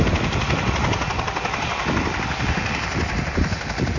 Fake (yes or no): no